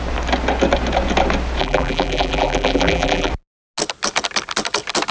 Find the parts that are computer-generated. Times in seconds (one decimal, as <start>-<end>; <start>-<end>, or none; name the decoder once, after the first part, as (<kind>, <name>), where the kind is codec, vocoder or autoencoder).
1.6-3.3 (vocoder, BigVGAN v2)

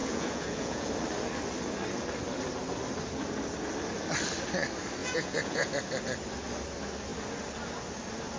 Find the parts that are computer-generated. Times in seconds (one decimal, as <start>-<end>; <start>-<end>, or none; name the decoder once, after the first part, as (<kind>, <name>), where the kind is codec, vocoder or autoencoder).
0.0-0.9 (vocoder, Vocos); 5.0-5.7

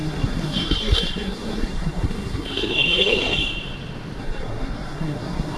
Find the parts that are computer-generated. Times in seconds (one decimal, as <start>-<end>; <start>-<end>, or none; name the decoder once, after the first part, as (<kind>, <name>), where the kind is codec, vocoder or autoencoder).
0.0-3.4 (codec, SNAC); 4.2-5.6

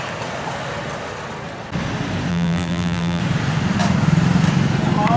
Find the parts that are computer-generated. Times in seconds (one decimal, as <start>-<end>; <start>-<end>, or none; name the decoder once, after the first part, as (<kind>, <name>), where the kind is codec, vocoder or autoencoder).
2.3-3.2 (vocoder, BigVGAN v2)